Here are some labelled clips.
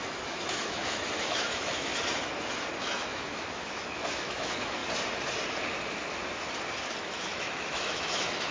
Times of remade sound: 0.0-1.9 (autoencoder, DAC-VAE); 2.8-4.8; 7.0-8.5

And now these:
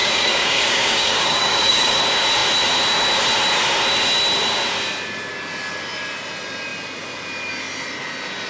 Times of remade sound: 0.0-2.0 (codec, DAC)

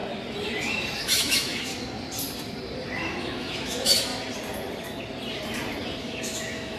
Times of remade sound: 1.0-1.7 (autoencoder, DAC-VAE); 3.2-4.1; 6.0-6.8

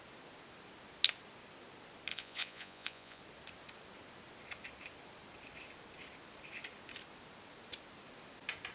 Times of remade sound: 2.1-3.2 (vocoder, Vocos)

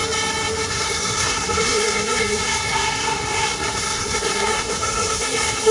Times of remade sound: 0.7-5.7 (codec, SNAC)

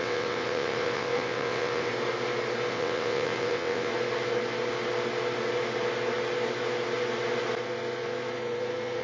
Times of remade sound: 0.0-1.9 (vocoder, WaveNeXt); 2.7-3.9